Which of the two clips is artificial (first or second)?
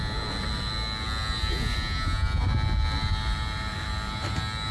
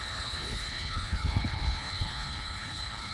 second